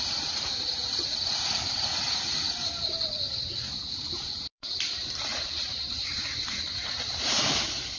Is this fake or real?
fake